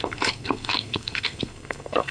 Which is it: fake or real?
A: fake